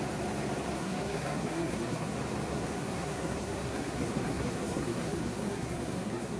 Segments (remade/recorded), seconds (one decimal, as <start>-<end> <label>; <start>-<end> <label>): 0.0-0.8 recorded; 0.8-2.1 remade; 2.1-2.5 recorded; 2.5-6.4 remade